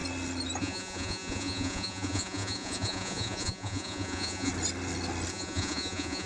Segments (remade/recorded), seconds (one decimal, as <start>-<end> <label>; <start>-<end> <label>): 0.0-0.6 recorded; 0.6-4.5 remade; 4.5-5.3 recorded; 5.3-6.3 remade